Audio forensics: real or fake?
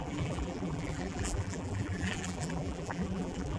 fake